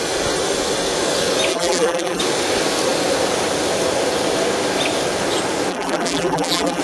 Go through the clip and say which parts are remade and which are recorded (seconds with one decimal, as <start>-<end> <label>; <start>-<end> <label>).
0.0-1.5 recorded; 1.5-2.2 remade; 2.2-5.7 recorded; 5.7-6.8 remade